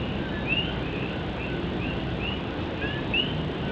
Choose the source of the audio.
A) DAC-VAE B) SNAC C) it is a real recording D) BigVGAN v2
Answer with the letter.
D